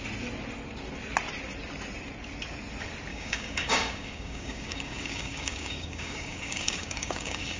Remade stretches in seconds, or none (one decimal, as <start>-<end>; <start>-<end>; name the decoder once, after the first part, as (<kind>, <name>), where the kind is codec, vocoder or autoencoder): 3.1-7.6 (codec, DAC)